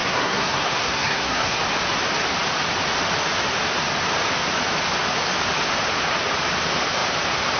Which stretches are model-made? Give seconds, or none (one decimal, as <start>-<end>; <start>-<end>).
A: 0.0-1.6